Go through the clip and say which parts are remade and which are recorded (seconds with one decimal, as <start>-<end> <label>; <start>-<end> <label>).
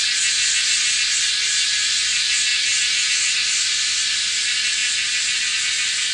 0.0-6.1 recorded